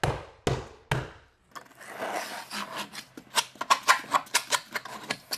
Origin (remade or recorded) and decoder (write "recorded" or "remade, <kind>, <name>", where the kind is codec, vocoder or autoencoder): recorded